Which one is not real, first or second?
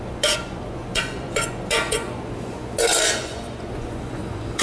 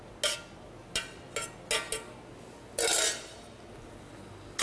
first